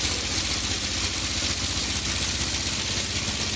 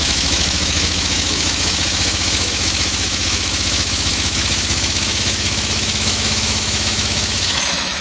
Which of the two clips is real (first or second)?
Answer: first